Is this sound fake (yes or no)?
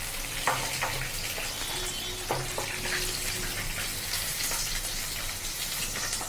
no